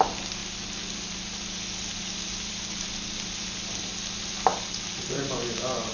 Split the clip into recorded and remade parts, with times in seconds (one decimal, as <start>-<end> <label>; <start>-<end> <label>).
0.0-5.9 recorded